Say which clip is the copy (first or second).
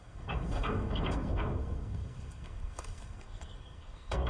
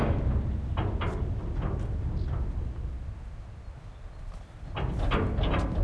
first